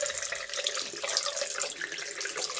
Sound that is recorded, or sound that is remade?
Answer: recorded